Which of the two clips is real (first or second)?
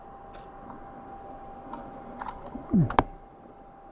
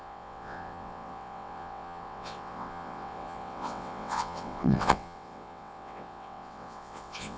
first